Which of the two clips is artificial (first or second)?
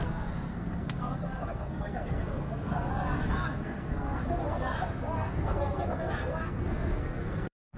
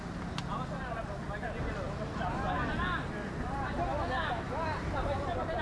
first